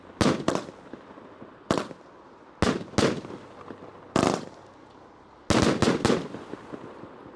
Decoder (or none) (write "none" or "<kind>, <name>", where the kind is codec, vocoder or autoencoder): none